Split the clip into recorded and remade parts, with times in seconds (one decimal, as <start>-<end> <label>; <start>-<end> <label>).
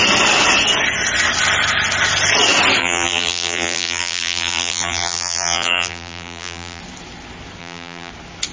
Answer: 0.0-2.8 recorded; 2.8-6.8 remade; 6.8-7.6 recorded; 7.6-8.1 remade; 8.1-8.5 recorded